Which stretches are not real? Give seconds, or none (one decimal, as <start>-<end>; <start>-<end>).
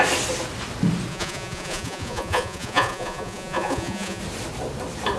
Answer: 1.1-4.2